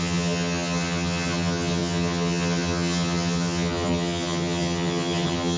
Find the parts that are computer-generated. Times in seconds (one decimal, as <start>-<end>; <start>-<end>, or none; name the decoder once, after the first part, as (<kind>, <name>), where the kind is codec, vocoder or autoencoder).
0.0-5.6 (vocoder, HiFi-GAN)